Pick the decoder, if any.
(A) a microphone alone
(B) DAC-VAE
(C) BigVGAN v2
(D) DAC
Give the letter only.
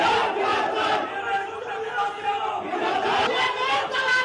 C